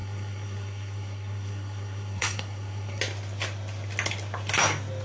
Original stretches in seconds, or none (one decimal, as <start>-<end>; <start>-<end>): 3.0-5.0